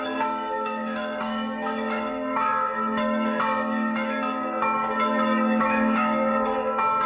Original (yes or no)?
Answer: no